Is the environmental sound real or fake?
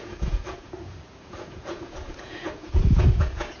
fake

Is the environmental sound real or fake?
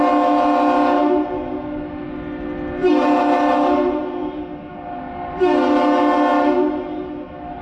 real